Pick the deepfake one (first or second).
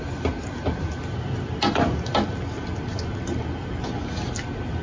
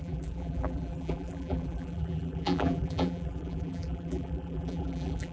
second